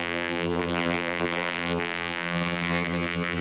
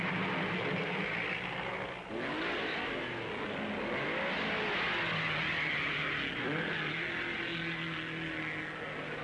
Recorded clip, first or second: second